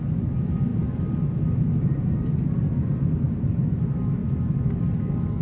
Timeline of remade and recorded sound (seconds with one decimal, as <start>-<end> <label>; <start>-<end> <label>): 0.0-0.7 remade; 0.7-3.5 recorded; 3.5-4.2 remade; 4.2-5.0 recorded; 5.0-5.4 remade